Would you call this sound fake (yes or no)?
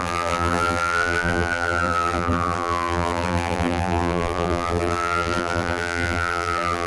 yes